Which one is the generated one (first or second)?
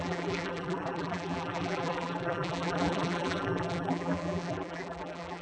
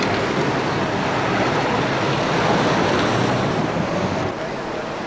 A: first